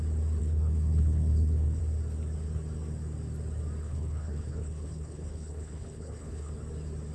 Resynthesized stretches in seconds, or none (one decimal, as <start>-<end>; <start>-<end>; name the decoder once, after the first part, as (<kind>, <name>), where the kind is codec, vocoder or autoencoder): 0.4-1.8 (codec, HILCodec); 3.8-6.5